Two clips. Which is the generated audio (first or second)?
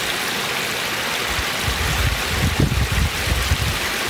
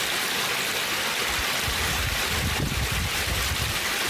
second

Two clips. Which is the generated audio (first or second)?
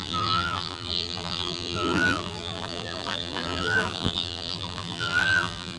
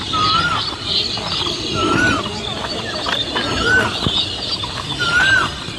first